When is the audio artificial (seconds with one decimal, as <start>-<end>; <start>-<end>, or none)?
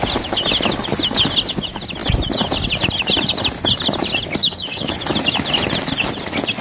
4.4-4.9